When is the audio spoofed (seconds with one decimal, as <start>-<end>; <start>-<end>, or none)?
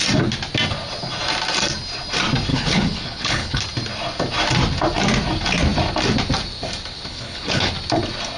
2.5-3.6; 7.1-7.7